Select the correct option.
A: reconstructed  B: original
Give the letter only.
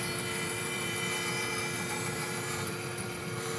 A